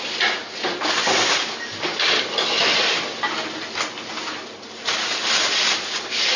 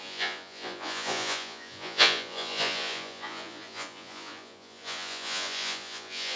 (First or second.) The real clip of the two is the first